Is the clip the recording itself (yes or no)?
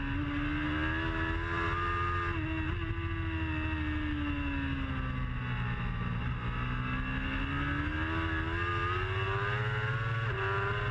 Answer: yes